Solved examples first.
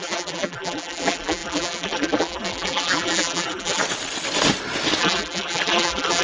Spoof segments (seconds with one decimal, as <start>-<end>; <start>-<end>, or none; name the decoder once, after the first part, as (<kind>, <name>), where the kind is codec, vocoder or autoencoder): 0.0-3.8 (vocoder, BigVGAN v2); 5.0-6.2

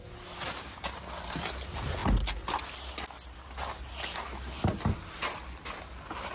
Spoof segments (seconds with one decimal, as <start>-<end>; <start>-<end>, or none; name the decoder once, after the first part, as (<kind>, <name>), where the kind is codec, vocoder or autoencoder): none

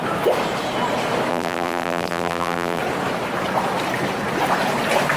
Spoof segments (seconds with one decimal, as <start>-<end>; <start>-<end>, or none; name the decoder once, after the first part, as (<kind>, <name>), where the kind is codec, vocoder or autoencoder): 1.3-2.8 (vocoder, BigVGAN v2)

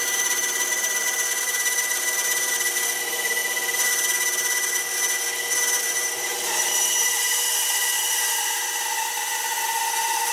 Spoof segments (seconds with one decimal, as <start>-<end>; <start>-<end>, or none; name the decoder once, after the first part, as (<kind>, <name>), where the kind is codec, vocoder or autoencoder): 0.0-3.4 (vocoder, BigVGAN v2); 5.8-10.3

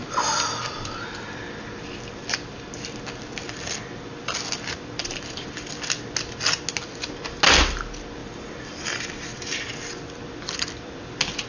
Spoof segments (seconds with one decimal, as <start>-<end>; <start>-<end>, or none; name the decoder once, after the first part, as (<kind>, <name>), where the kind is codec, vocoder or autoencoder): 5.0-5.7 (vocoder, BigVGAN v2); 8.2-9.0

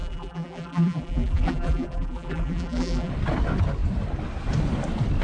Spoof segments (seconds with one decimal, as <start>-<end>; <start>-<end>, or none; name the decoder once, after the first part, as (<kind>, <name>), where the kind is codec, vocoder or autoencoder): 0.0-3.1 (vocoder, BigVGAN v2)

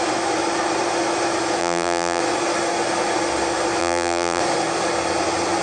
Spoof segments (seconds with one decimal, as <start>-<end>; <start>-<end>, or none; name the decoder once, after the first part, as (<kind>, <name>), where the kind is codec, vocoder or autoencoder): 1.6-2.2 (vocoder, BigVGAN v2); 3.8-4.4

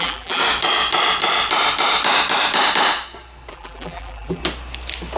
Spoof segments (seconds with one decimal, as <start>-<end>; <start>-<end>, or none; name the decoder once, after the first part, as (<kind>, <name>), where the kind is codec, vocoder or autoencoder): 0.0-0.4 (vocoder, BigVGAN v2); 3.5-4.4